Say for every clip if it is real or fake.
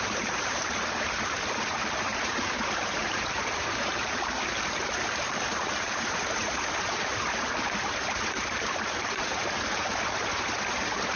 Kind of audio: fake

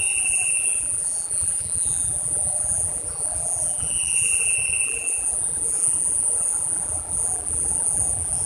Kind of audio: fake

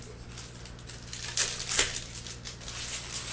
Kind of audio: real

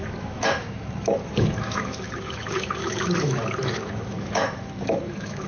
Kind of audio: fake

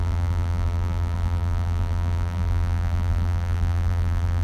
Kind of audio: fake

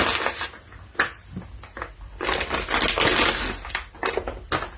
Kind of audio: real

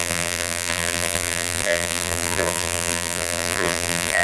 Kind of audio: fake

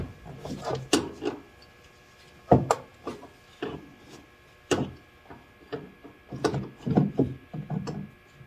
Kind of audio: real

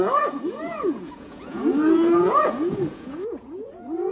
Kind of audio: fake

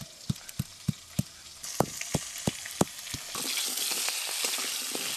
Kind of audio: real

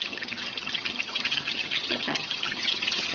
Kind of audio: fake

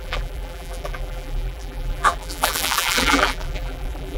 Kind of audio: fake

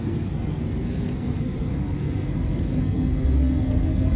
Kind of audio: fake